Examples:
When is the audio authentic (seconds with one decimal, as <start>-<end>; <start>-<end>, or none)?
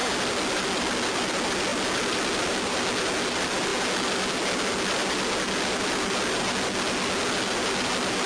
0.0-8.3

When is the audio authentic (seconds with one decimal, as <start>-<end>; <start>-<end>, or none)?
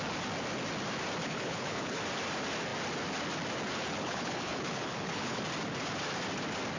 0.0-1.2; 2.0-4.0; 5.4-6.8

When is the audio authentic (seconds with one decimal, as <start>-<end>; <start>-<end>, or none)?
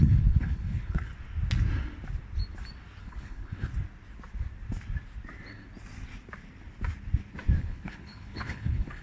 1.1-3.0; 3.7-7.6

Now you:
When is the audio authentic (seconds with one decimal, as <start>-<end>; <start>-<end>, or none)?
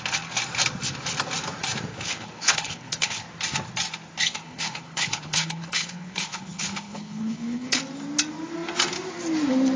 0.0-1.9; 3.2-4.3; 7.8-9.8